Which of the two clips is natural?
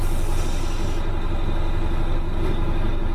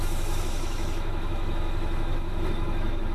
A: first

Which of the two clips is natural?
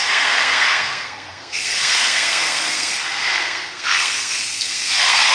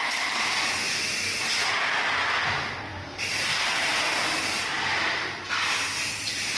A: second